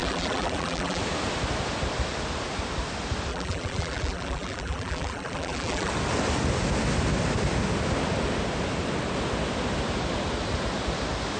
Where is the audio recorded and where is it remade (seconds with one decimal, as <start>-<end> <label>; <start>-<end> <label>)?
0.0-1.0 remade; 1.0-3.3 recorded; 3.3-5.9 remade; 5.9-11.4 recorded